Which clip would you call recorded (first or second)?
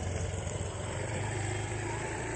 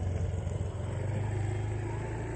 second